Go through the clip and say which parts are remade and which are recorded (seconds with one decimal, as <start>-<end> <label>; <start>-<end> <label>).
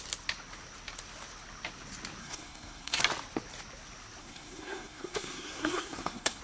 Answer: 0.0-2.2 recorded; 2.2-3.0 remade; 3.0-4.2 recorded; 4.2-6.4 remade